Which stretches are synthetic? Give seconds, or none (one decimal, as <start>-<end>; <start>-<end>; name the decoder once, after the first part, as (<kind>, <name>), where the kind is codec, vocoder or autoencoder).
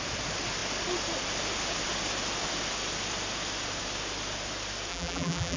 4.9-5.6 (vocoder, BigVGAN v2)